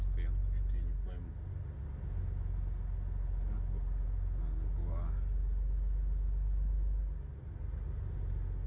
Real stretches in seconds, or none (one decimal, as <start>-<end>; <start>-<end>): 0.0-8.7